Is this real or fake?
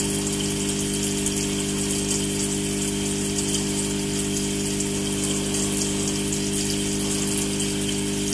real